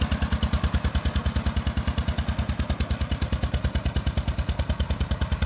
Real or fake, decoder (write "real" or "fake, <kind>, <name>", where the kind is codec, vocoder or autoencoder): real